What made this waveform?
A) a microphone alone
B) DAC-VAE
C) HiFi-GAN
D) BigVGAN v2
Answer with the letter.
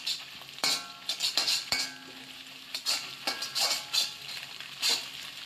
D